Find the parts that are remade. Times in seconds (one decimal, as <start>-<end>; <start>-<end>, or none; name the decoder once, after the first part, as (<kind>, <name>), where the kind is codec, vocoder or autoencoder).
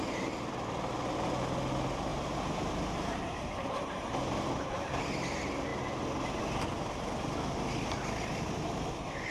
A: none